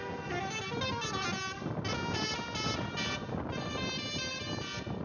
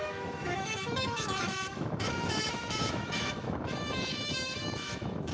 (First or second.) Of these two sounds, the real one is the first